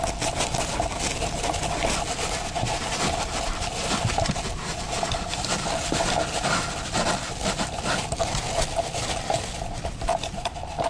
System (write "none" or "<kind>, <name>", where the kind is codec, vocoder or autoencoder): none